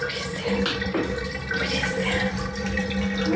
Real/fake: real